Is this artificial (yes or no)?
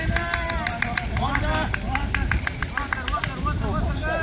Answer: no